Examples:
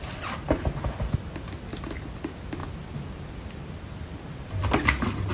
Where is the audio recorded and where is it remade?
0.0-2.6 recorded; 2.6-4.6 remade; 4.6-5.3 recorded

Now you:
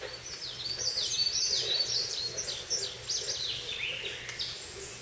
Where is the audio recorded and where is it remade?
0.0-1.2 recorded; 1.2-2.4 remade; 2.4-5.0 recorded

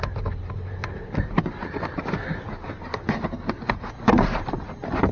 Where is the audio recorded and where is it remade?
0.0-0.8 remade; 0.8-3.7 recorded; 3.7-5.1 remade

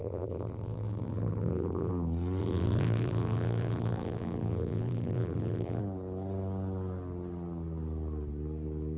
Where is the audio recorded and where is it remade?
0.0-1.9 remade; 1.9-2.4 recorded; 2.4-5.8 remade; 5.8-9.0 recorded